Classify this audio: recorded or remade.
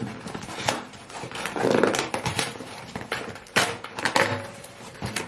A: remade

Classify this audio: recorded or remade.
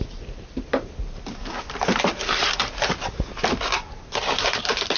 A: recorded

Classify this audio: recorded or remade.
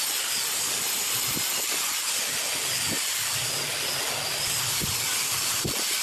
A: recorded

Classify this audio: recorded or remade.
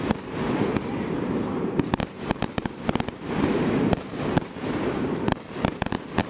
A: remade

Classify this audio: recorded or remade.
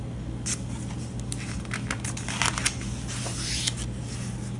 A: recorded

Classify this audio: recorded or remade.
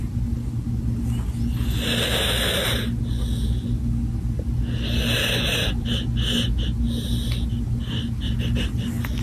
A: recorded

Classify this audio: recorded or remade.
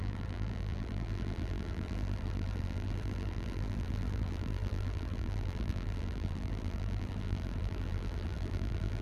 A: remade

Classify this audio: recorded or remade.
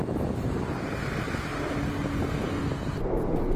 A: recorded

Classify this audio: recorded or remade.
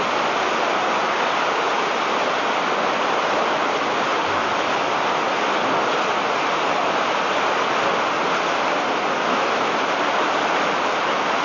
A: recorded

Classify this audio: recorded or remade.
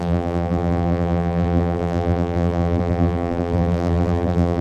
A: remade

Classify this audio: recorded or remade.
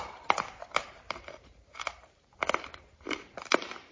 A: remade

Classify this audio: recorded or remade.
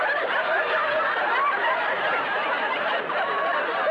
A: recorded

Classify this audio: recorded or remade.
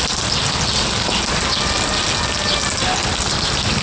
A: recorded